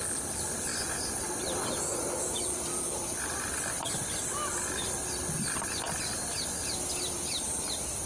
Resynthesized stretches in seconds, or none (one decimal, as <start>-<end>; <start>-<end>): 0.7-1.2